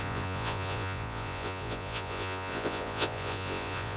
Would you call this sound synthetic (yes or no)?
yes